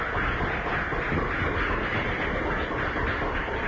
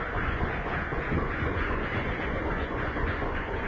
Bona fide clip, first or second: first